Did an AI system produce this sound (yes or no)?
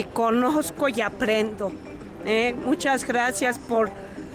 no